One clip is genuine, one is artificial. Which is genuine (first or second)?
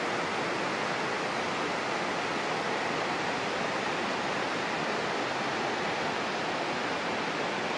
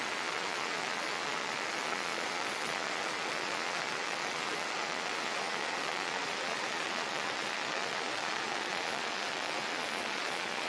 first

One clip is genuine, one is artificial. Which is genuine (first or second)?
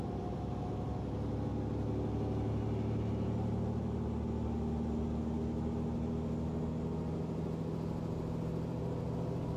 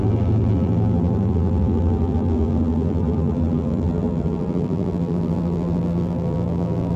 first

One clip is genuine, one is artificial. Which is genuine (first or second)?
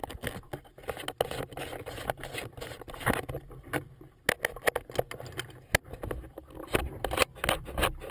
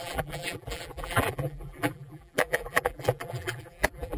first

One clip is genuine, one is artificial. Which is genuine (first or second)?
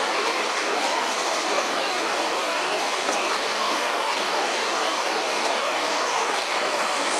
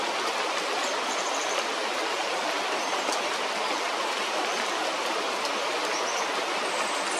second